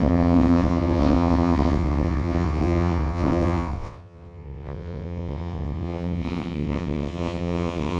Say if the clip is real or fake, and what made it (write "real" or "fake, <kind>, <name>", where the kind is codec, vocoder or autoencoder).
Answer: fake, vocoder, WaveNeXt